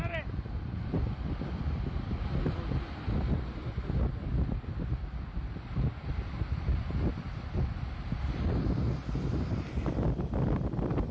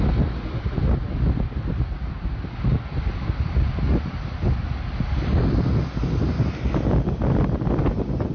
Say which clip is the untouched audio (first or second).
second